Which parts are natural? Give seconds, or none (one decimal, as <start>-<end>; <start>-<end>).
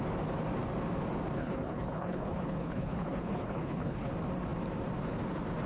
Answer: 0.0-1.4; 4.1-5.7